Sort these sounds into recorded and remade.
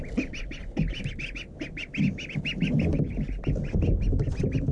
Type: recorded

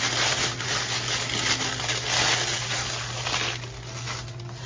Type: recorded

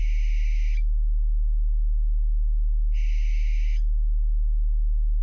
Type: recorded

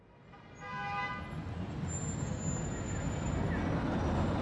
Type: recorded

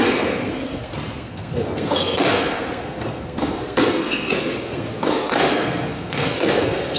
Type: remade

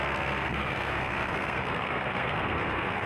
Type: remade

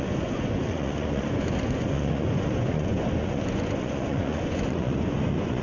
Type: remade